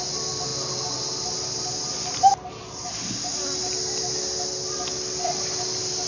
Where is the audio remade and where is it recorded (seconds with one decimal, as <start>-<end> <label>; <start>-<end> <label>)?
0.0-6.1 recorded